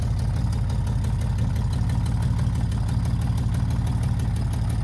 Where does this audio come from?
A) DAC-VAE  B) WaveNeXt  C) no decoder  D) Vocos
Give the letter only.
C